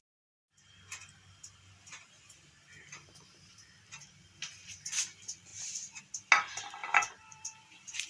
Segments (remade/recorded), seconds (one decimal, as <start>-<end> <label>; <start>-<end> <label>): 0.0-6.8 recorded; 6.8-8.1 remade